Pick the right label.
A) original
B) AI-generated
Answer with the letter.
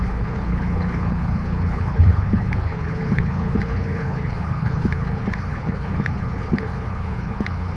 B